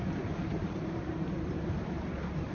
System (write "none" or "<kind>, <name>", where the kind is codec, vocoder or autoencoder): none